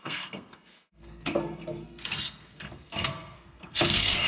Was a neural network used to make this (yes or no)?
yes